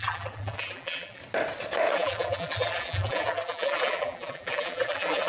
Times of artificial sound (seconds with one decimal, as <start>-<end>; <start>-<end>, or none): 0.0-1.2; 1.9-5.3